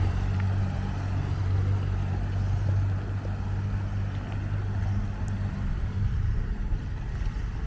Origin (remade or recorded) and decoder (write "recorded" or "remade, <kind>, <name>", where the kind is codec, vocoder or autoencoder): recorded